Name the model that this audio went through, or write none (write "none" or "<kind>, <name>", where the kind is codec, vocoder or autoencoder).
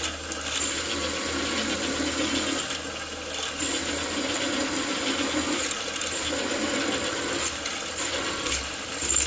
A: none